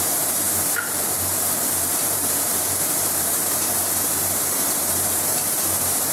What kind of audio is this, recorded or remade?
remade